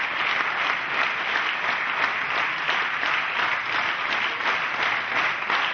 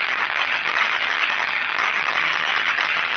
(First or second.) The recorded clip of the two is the first